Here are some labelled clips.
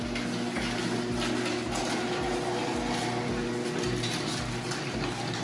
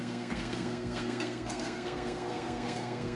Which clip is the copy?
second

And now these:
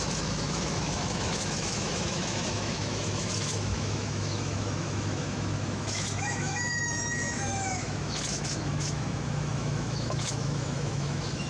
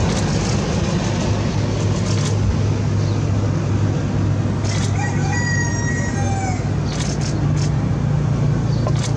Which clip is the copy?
first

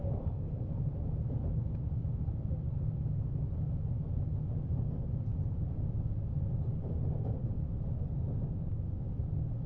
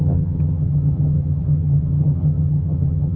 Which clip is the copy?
second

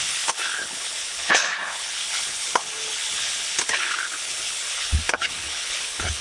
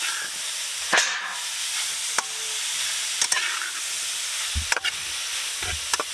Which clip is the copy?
first